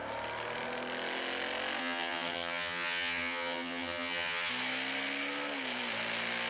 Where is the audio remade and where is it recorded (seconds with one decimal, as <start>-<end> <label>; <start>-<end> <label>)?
0.0-1.8 recorded; 1.8-4.5 remade; 4.5-6.5 recorded